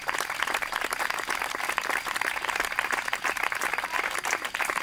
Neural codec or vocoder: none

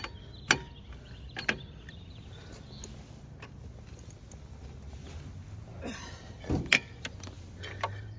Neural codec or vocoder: none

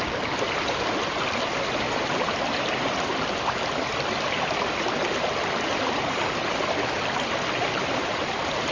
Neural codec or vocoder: none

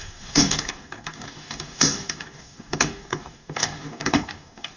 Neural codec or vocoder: codec, DAC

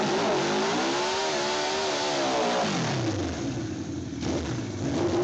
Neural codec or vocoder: none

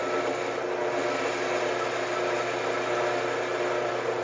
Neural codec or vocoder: none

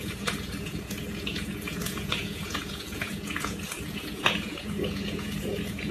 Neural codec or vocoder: vocoder, Vocos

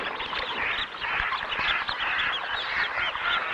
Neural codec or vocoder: none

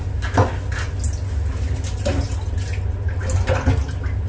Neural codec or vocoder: none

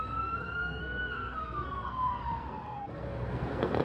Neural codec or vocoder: codec, SNAC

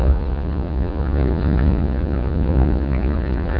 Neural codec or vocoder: vocoder, Vocos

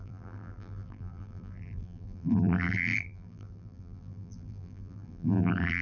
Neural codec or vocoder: vocoder, BigVGAN v2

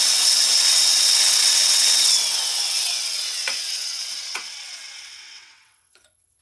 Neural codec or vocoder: vocoder, WaveNeXt